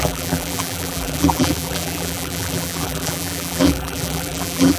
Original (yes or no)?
no